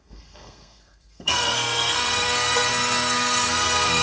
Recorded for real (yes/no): no